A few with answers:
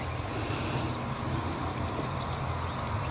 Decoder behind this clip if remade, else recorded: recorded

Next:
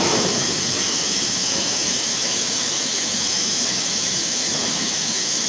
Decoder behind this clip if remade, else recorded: remade, autoencoder, DAC-VAE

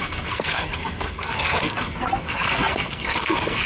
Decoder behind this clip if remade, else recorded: remade, codec, SNAC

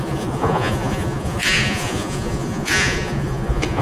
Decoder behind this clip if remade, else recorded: remade, vocoder, Vocos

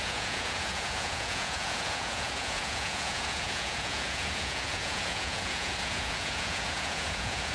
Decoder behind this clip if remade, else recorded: remade, vocoder, Vocos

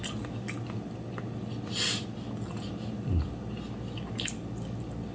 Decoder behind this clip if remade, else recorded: recorded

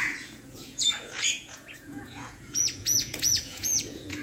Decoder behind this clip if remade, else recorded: remade, vocoder, Vocos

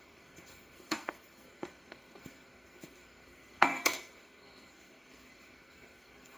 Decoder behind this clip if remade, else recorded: remade, codec, SNAC